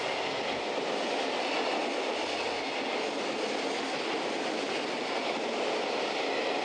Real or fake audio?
real